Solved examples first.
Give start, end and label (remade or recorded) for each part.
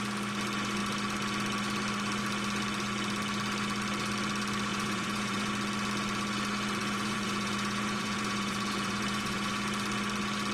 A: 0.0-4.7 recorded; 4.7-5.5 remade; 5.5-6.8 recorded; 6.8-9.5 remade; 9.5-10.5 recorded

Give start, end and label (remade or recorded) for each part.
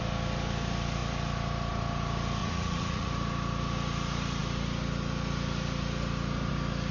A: 0.0-2.4 recorded; 2.4-3.1 remade; 3.1-6.9 recorded